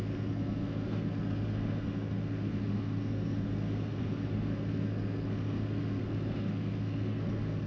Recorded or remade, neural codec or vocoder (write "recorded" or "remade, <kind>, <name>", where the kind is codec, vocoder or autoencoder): remade, codec, SNAC